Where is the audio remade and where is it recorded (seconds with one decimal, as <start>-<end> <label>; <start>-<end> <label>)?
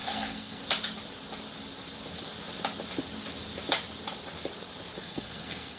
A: 0.0-0.6 remade; 0.6-5.0 recorded; 5.0-5.8 remade